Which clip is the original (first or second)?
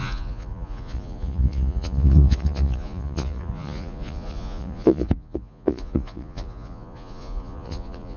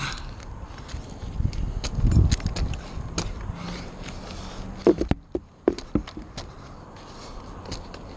second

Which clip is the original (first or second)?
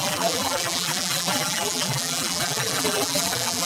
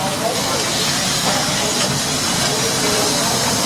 second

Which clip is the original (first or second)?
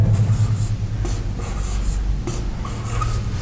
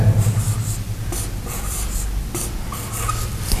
first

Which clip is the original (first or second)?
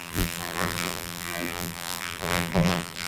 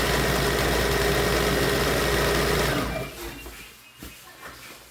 second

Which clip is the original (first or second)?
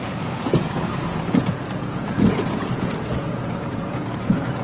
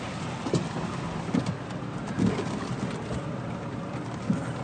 second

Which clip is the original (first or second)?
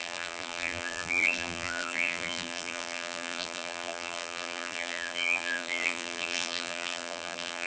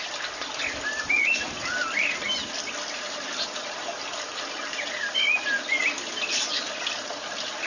second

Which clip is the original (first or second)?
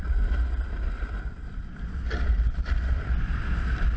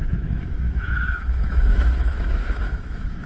first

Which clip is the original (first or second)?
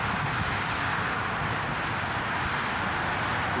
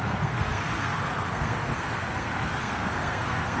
first